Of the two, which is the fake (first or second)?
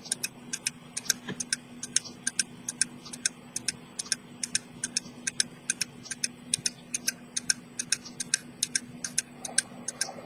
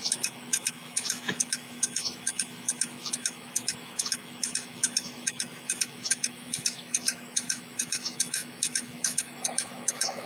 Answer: second